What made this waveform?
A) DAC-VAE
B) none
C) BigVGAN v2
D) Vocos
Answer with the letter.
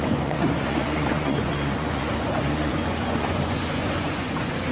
D